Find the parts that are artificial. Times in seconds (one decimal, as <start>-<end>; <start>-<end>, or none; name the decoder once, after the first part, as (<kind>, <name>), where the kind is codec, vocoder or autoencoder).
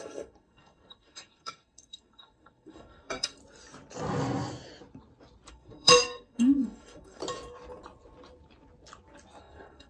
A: 0.0-3.4 (codec, SNAC); 5.5-7.2; 9.4-9.9